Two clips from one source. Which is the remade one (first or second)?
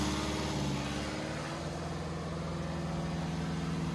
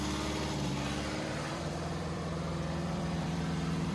second